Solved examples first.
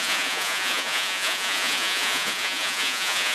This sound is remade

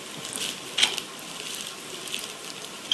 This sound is recorded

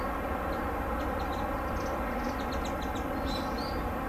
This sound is recorded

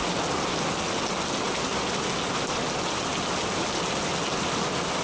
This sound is recorded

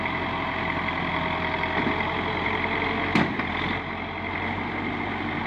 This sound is recorded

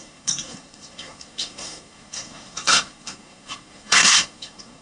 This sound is remade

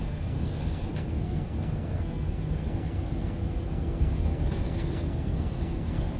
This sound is remade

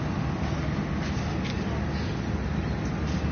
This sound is recorded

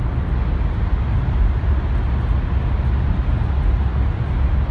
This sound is recorded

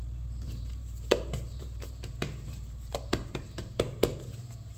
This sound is remade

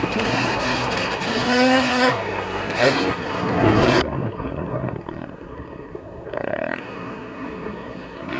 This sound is remade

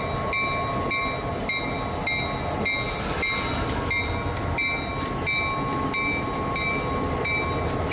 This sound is recorded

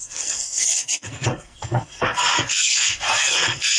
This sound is remade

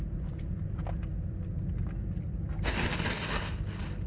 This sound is recorded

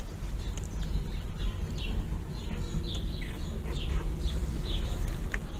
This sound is recorded